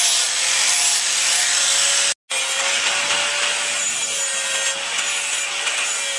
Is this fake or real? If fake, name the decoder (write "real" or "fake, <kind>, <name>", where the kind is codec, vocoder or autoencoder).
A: real